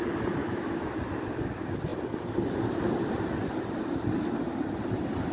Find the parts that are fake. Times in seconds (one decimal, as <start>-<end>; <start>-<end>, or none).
0.4-0.9